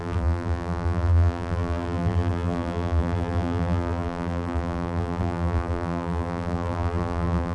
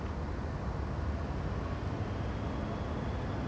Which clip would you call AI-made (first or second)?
first